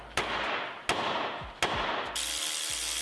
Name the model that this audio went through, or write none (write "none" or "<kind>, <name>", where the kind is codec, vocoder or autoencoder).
none